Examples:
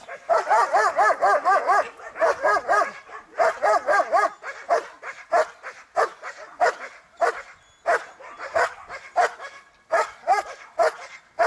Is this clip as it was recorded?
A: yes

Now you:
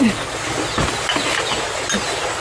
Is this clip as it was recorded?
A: yes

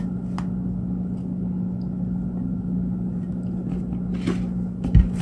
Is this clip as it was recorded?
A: yes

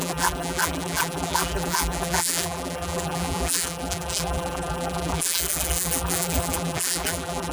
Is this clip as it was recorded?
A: no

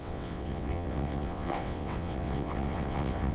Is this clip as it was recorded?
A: no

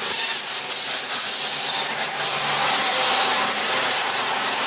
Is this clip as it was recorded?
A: yes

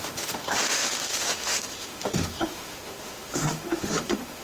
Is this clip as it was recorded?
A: no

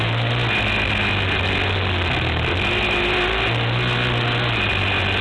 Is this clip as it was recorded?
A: yes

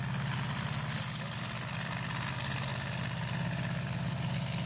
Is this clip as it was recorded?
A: yes